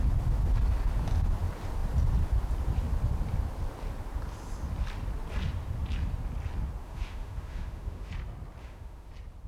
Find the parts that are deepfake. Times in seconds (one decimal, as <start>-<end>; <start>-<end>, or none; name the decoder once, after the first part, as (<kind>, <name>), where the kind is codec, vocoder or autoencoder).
6.8-8.1 (autoencoder, DAC-VAE); 8.6-9.1